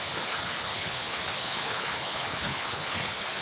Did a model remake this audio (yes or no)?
yes